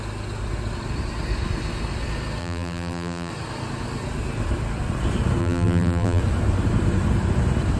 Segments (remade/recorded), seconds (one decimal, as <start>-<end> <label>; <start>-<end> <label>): 0.0-2.4 recorded; 2.4-3.3 remade; 3.3-5.4 recorded; 5.4-6.2 remade; 6.2-7.8 recorded